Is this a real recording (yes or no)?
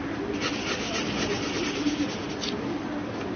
yes